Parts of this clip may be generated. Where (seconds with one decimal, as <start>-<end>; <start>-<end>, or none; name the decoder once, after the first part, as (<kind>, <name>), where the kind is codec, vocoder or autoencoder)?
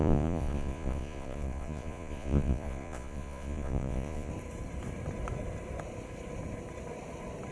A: 0.0-4.3 (vocoder, Vocos)